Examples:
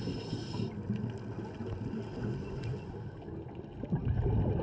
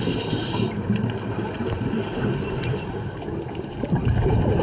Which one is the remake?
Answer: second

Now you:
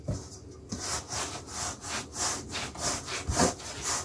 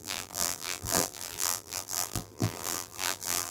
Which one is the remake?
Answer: second